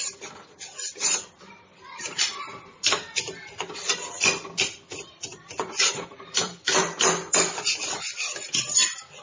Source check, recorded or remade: remade